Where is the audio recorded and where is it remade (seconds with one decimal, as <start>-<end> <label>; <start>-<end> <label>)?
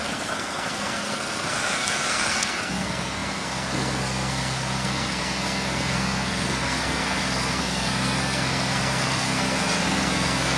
0.0-10.6 remade